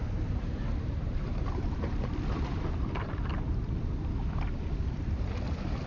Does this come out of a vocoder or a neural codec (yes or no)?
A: no